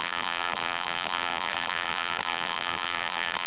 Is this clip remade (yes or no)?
yes